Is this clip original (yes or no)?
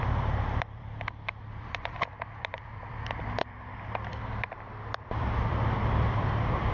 no